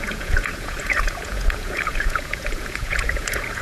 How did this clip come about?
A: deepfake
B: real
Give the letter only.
A